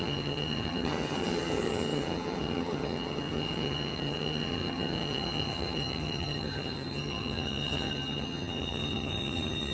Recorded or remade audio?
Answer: remade